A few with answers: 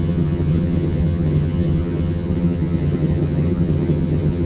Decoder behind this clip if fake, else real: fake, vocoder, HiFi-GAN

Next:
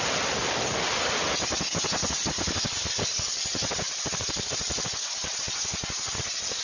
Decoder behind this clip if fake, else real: real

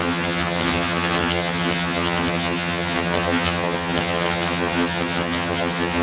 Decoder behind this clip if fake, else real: fake, vocoder, HiFi-GAN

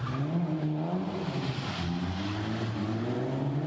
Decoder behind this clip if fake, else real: real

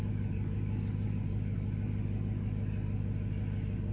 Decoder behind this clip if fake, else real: real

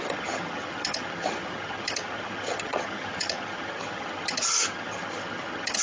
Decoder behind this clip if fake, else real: fake, vocoder, HiFi-GAN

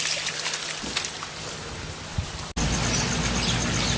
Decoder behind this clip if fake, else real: real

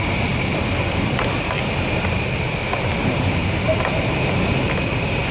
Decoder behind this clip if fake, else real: real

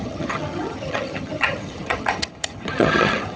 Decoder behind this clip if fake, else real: fake, vocoder, HiFi-GAN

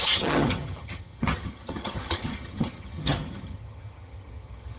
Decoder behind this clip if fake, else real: fake, vocoder, HiFi-GAN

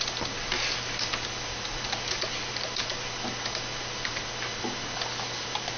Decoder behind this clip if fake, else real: real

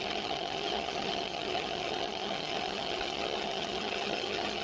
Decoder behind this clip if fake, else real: fake, vocoder, HiFi-GAN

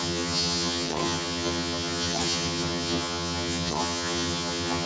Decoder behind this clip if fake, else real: fake, vocoder, HiFi-GAN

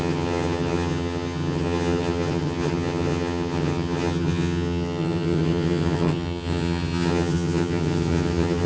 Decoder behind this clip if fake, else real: fake, vocoder, HiFi-GAN